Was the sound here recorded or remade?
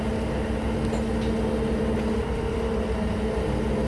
recorded